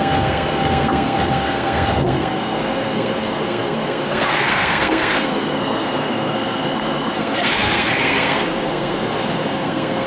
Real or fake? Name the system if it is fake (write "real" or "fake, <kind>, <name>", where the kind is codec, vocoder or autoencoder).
fake, codec, SNAC